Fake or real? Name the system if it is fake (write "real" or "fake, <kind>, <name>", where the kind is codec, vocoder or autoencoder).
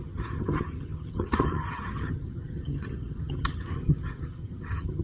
fake, vocoder, HiFi-GAN